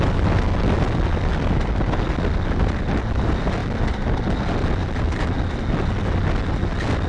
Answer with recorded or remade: recorded